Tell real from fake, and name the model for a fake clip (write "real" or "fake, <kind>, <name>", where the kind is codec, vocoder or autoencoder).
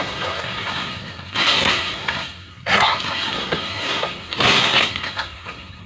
fake, codec, SNAC